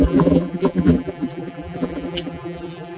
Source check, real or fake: fake